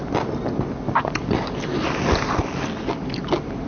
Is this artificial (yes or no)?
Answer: no